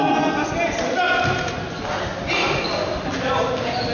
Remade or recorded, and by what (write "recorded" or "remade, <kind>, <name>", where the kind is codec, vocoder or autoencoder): recorded